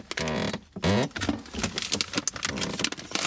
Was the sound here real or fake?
real